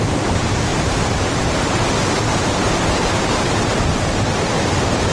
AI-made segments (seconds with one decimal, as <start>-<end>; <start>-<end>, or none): 0.0-5.1